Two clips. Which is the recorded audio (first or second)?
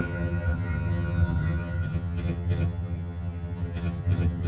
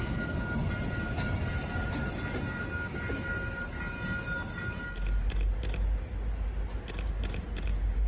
second